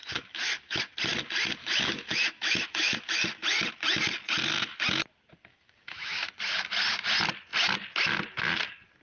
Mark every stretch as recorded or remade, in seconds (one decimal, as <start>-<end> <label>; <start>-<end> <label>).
0.0-0.8 remade; 0.8-1.6 recorded; 1.6-3.1 remade; 3.1-5.5 recorded; 5.5-6.4 remade; 6.4-9.0 recorded